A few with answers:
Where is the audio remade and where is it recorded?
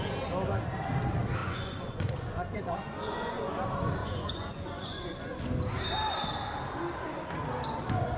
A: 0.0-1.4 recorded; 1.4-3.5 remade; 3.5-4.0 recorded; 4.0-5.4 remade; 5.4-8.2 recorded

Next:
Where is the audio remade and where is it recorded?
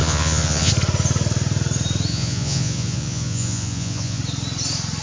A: 0.0-0.7 remade; 0.7-2.1 recorded; 2.1-4.2 remade; 4.2-5.0 recorded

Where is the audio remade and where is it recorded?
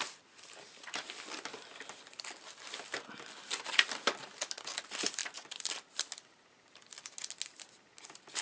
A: 0.0-8.4 recorded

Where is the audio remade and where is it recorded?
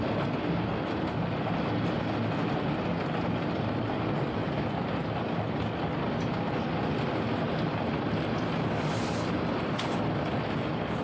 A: 0.0-11.0 recorded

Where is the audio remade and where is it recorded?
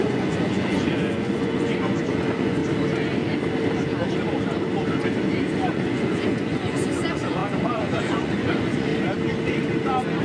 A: 0.0-2.6 remade; 2.6-5.7 recorded; 5.7-8.9 remade; 8.9-10.2 recorded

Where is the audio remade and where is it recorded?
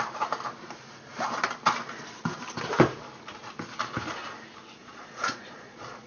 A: 0.0-4.8 recorded; 4.8-6.1 remade